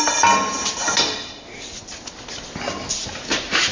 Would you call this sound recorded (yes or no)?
yes